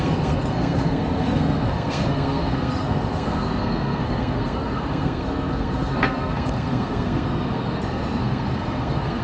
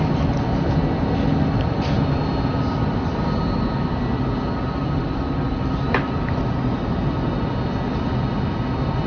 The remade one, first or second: first